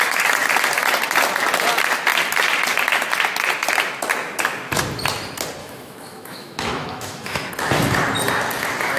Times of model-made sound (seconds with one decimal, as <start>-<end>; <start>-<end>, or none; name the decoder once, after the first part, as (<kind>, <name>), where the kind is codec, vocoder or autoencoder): 5.6-7.5 (autoencoder, DAC-VAE)